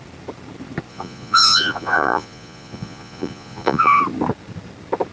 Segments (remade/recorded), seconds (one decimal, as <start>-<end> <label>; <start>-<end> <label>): 0.0-0.9 recorded; 0.9-4.0 remade; 4.0-5.1 recorded